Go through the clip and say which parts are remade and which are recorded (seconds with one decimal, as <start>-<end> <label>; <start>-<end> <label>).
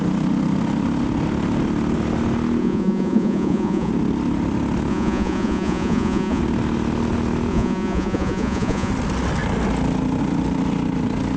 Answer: 0.0-2.6 recorded; 2.6-3.9 remade; 3.9-4.9 recorded; 4.9-6.4 remade; 6.4-7.5 recorded; 7.5-8.9 remade; 8.9-11.4 recorded